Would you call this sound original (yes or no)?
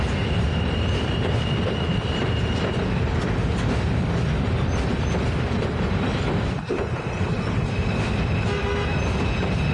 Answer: yes